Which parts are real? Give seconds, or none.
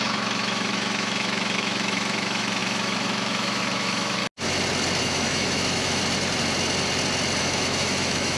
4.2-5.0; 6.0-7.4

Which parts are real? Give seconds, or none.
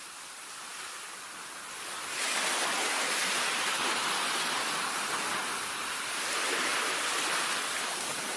0.0-8.4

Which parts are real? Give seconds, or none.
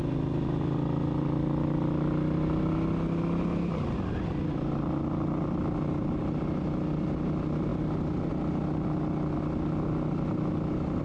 0.0-11.0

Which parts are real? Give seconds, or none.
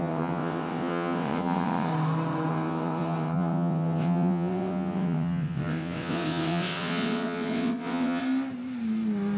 1.9-2.5; 8.2-9.4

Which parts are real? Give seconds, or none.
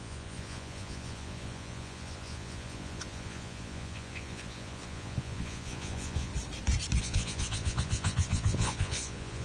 6.3-7.0